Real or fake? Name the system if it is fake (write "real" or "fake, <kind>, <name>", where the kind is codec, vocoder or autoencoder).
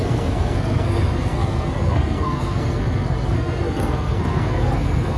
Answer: fake, codec, SNAC